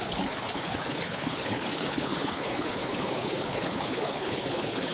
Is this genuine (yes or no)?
no